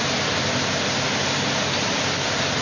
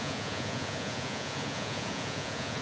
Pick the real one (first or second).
first